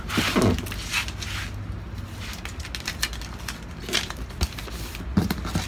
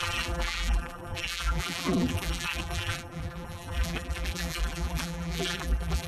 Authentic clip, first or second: first